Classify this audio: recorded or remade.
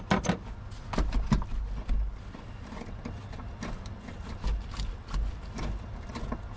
recorded